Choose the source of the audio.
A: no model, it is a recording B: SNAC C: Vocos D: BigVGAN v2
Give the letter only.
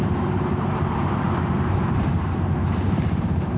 D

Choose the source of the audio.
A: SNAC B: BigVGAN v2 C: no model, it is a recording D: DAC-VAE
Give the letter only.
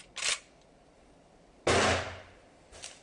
C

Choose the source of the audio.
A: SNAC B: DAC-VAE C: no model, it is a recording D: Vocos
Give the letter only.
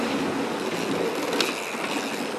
C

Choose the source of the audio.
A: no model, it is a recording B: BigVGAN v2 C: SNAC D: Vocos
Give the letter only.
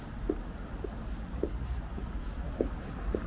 A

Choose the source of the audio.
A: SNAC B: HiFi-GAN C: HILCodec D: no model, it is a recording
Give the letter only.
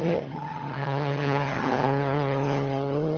B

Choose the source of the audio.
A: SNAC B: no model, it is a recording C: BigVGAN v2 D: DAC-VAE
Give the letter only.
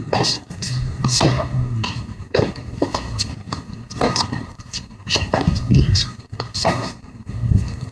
A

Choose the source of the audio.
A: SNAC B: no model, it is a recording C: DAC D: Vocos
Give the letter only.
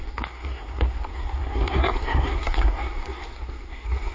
A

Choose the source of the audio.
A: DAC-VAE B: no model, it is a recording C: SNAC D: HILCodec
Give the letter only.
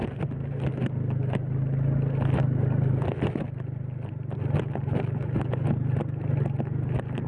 B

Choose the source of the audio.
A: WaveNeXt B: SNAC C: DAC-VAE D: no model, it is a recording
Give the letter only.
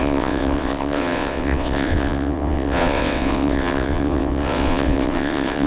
A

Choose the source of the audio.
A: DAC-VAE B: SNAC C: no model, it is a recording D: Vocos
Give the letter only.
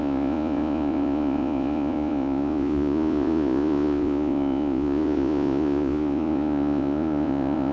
D